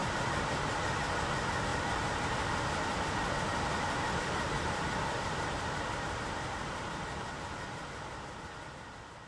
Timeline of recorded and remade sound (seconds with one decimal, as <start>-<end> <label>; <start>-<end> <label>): 0.0-1.0 remade; 1.0-3.7 recorded; 3.7-8.7 remade; 8.7-9.3 recorded